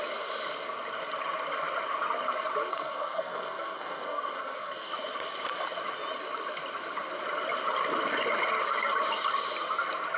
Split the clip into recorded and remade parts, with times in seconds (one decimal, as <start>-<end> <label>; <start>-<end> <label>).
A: 0.0-2.7 recorded; 2.7-4.9 remade; 4.9-10.2 recorded